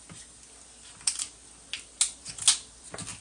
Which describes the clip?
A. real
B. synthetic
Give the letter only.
A